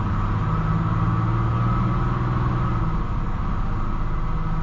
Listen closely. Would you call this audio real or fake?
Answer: real